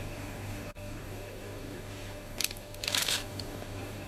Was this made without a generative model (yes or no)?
no